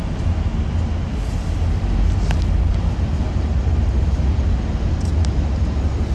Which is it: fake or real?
real